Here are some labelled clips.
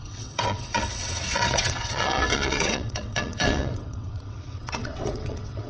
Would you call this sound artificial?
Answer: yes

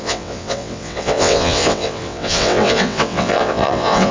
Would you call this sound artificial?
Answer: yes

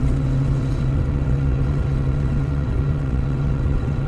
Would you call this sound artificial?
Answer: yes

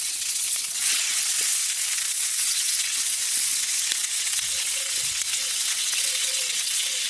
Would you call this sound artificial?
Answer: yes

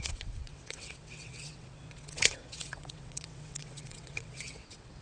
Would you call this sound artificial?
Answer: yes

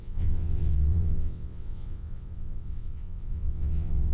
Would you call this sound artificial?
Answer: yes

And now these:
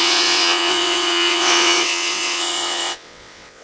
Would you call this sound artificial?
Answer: yes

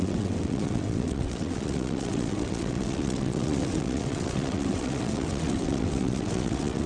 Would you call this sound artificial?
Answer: yes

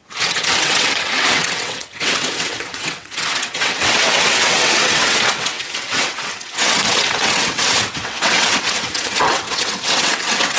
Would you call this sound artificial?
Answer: yes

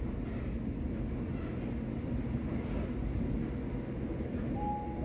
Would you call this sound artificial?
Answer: no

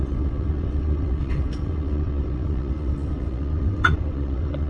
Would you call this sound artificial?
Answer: yes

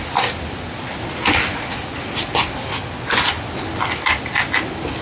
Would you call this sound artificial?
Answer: no